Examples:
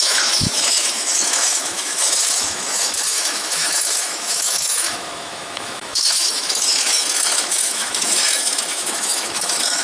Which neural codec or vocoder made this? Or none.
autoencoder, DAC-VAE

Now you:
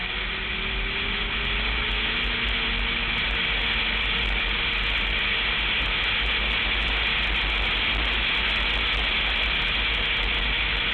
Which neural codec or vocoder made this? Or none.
none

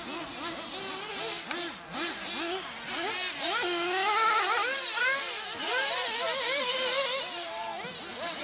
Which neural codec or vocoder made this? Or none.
none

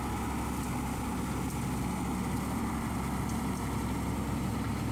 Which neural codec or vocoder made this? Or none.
none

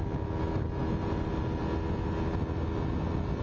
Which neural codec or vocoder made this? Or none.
none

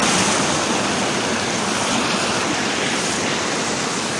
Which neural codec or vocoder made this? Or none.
none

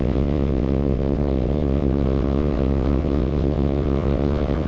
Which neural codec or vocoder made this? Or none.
vocoder, WaveNeXt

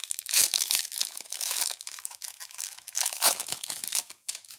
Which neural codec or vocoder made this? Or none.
autoencoder, DAC-VAE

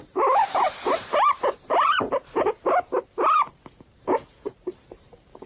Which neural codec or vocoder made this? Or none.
vocoder, BigVGAN v2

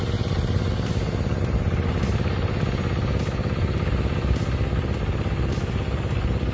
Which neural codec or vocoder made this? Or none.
none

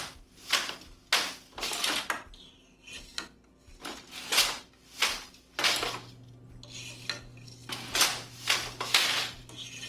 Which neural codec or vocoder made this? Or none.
none